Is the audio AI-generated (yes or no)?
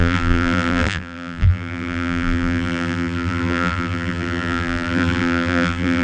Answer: yes